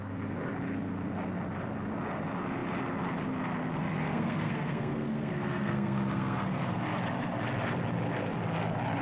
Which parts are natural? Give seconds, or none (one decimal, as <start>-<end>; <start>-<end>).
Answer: 0.0-3.8; 6.8-9.0